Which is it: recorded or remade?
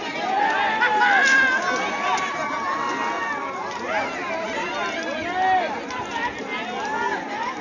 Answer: recorded